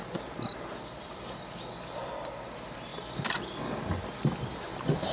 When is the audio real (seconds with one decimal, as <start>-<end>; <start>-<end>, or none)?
1.4-2.9; 3.8-5.1